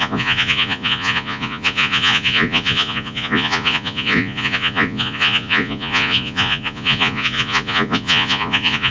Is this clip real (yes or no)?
no